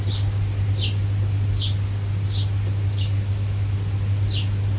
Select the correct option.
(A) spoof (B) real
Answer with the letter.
B